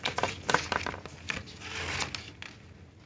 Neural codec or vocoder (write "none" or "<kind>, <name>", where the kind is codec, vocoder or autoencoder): none